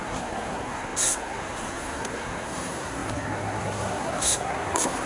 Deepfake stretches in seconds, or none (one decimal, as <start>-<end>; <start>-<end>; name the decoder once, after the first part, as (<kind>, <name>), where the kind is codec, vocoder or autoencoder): 0.0-5.1 (codec, SNAC)